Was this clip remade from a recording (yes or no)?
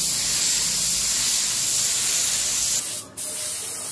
no